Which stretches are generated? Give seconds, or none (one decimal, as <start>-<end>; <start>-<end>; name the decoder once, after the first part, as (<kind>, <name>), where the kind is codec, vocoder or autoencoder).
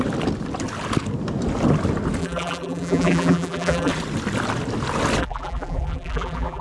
2.2-3.9 (vocoder, BigVGAN v2); 5.2-6.6